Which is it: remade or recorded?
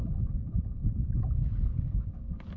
recorded